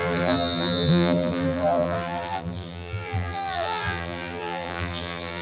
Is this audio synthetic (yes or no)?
yes